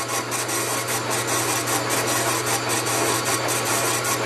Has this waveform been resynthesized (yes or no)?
no